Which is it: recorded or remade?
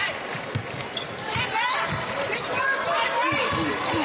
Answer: recorded